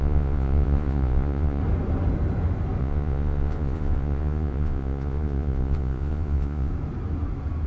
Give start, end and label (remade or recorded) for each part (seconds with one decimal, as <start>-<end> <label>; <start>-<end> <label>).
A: 0.0-1.6 remade; 1.6-2.8 recorded; 2.8-6.7 remade; 6.7-7.7 recorded